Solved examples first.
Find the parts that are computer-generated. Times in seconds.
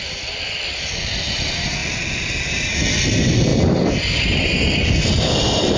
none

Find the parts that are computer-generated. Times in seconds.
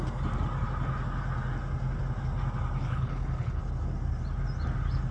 2.8-3.6 (codec, HILCodec)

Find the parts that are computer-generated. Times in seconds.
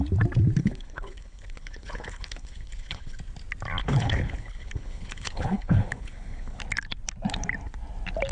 0.6-3.2 (codec, HILCodec); 3.8-6.6